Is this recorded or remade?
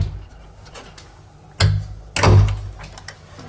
recorded